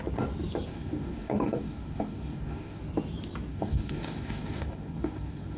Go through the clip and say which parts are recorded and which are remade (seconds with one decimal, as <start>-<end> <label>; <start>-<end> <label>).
0.0-0.7 recorded; 0.7-2.8 remade; 2.8-3.5 recorded; 3.5-5.6 remade